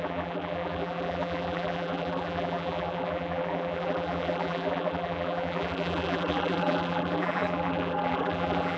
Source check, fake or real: fake